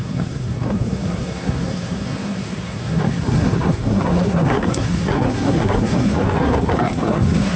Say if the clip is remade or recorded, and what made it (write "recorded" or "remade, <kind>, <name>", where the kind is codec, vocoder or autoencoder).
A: remade, codec, SNAC